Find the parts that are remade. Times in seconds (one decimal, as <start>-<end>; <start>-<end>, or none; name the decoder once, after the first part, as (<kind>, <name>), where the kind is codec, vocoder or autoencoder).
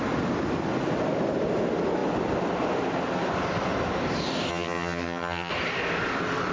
4.5-5.5 (vocoder, HiFi-GAN)